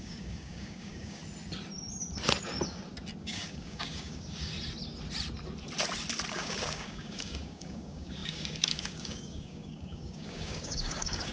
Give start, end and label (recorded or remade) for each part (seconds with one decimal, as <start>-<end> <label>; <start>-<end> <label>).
0.0-1.2 remade; 1.2-3.2 recorded; 3.2-4.5 remade; 4.5-6.3 recorded; 6.3-11.3 remade